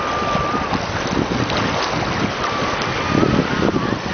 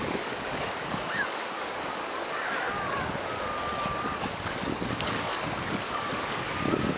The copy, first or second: second